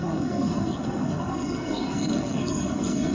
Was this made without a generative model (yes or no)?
no